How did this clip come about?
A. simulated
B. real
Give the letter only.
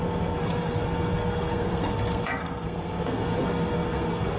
A